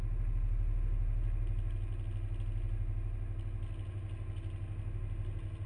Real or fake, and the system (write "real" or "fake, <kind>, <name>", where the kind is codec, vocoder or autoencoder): real